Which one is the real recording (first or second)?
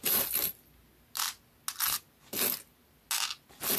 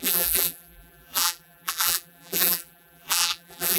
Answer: first